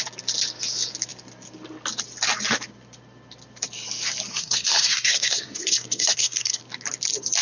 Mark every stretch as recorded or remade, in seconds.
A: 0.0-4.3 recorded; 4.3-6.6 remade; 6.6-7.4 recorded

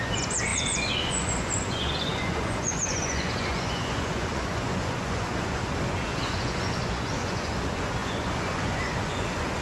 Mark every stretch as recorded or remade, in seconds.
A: 0.0-9.6 remade

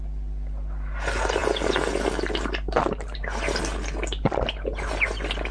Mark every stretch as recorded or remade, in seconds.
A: 0.0-5.5 recorded

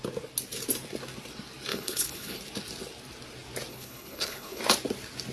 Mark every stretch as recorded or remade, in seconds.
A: 0.0-1.7 recorded; 1.7-2.4 remade; 2.4-3.7 recorded; 3.7-4.6 remade; 4.6-5.3 recorded

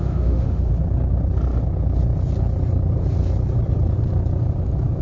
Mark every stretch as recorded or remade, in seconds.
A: 0.0-0.7 remade; 0.7-5.0 recorded

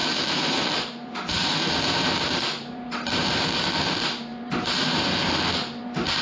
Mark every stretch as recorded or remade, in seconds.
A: 0.0-6.2 remade